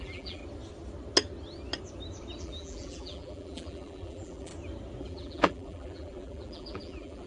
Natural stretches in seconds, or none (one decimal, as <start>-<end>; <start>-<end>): 0.4-2.4; 4.5-5.0